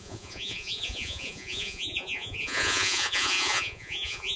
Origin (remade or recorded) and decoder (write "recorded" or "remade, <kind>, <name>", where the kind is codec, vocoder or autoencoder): remade, vocoder, Vocos